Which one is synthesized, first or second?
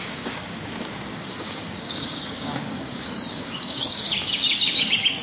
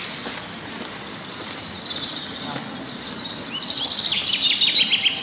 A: first